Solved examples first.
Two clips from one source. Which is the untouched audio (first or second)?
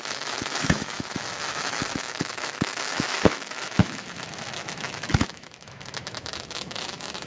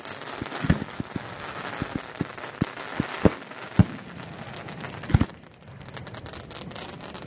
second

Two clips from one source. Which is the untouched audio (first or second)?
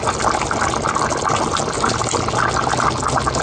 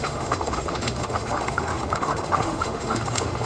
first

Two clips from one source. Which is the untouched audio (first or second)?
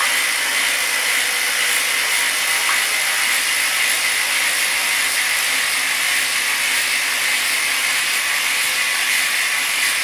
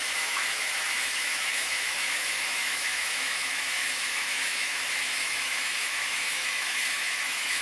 first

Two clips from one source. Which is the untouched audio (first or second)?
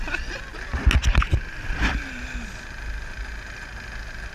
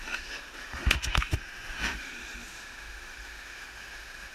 first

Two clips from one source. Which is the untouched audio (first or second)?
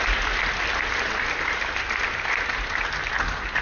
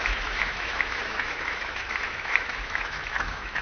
first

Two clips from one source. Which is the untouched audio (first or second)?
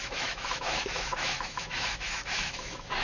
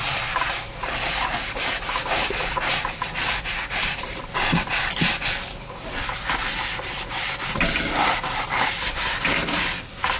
second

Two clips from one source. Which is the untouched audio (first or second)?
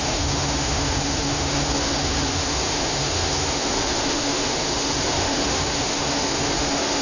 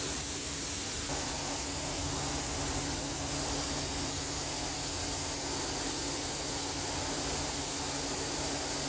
second